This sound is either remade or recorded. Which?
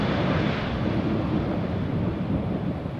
recorded